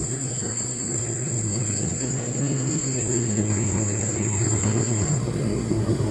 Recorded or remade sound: remade